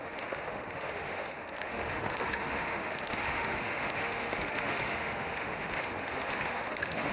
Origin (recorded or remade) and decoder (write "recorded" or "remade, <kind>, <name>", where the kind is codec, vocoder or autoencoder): remade, autoencoder, DAC-VAE